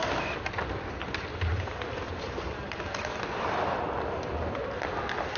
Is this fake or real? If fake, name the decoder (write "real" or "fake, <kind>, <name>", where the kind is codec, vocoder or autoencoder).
real